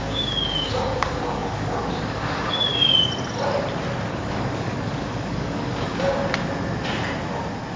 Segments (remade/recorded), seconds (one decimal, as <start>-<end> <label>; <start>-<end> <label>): 0.0-2.7 remade; 2.7-4.1 recorded; 4.1-6.2 remade; 6.2-7.8 recorded